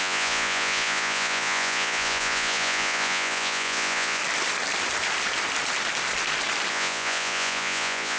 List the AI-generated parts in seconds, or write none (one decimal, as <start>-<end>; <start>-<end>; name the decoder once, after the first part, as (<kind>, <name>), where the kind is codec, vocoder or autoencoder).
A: 0.0-4.2 (vocoder, Vocos); 6.7-8.2